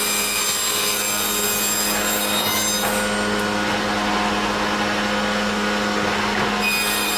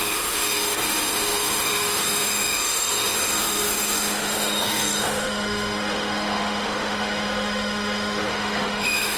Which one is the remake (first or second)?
second